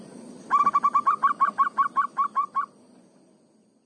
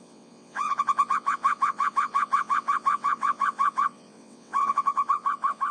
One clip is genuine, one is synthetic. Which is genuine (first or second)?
first